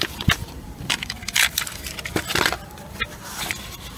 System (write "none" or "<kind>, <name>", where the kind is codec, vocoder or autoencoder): vocoder, BigVGAN v2